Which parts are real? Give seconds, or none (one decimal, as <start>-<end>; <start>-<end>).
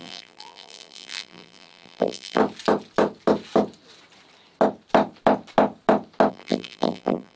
2.4-6.3